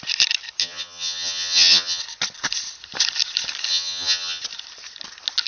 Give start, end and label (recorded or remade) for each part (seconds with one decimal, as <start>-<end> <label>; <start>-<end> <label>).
0.0-0.6 recorded; 0.6-2.0 remade; 2.0-3.7 recorded; 3.7-4.4 remade; 4.4-5.5 recorded

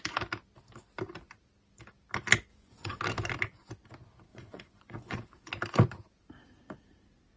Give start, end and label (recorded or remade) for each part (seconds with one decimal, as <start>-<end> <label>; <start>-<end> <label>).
0.0-2.5 recorded; 2.5-3.0 remade; 3.0-4.3 recorded; 4.3-5.5 remade; 5.5-7.4 recorded

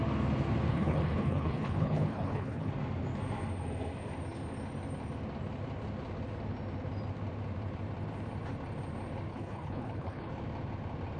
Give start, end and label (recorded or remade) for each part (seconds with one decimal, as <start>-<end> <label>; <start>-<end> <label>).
0.0-0.7 recorded; 0.7-2.7 remade; 2.7-9.3 recorded; 9.3-10.3 remade; 10.3-11.2 recorded

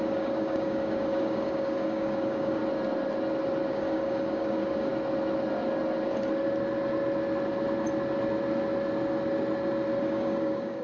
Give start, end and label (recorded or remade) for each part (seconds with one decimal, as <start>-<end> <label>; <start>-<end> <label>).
0.0-2.6 remade; 2.6-3.7 recorded; 3.7-4.9 remade; 4.9-10.0 recorded; 10.0-10.8 remade

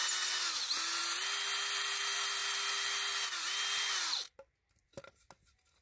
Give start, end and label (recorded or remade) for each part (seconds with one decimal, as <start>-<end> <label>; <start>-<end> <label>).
0.0-5.8 recorded

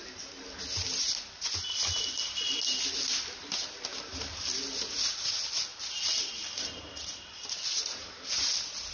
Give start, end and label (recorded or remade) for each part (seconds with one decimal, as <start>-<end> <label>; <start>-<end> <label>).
0.0-5.7 recorded; 5.7-8.5 remade; 8.5-8.9 recorded